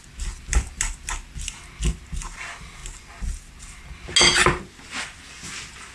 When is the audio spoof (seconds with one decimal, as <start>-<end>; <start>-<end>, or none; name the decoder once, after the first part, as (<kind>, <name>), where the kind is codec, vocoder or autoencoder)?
none